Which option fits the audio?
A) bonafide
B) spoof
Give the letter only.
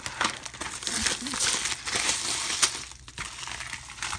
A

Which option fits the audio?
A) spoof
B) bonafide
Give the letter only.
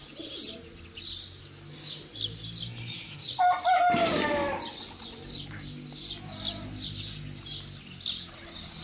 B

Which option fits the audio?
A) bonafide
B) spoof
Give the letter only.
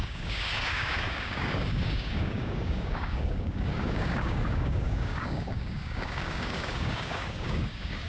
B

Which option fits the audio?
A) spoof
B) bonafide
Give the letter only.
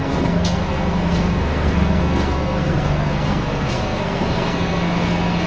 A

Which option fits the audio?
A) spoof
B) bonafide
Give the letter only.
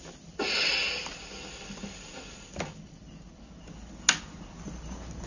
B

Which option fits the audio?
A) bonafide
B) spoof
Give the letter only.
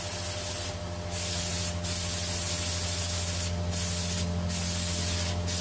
A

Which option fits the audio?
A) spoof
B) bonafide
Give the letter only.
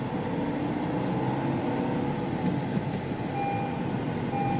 B